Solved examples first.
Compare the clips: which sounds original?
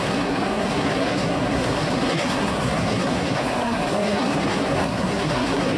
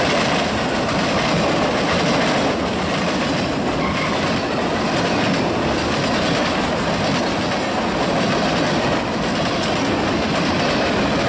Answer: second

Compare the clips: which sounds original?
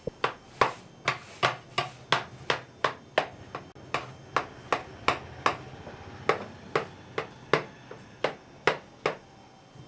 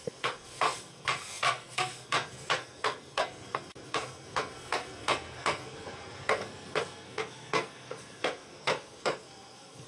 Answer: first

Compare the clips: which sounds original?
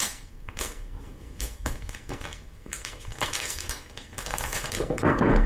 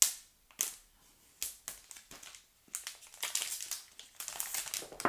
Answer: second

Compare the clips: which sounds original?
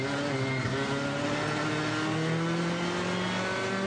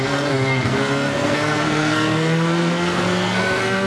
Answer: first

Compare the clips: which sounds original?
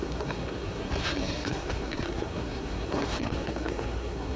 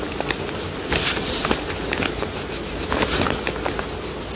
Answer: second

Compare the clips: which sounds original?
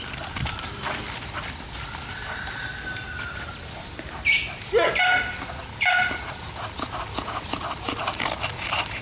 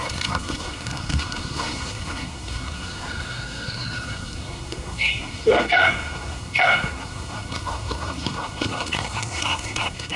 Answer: first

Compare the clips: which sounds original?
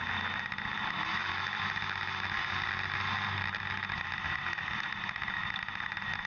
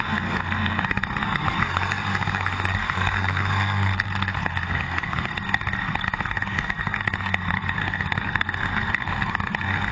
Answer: first